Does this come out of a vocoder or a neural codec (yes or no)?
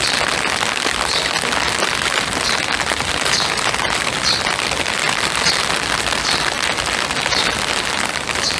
no